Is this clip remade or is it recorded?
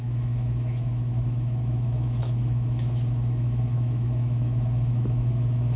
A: remade